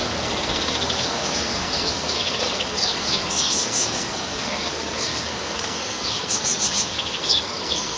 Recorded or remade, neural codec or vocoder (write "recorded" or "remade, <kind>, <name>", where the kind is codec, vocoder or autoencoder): remade, codec, SNAC